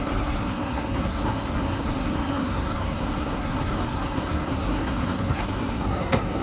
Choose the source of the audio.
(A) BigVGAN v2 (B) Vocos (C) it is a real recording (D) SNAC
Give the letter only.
D